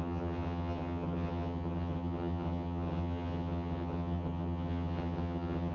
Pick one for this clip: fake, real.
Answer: fake